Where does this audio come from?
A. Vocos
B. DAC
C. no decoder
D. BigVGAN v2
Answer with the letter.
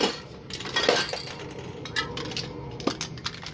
C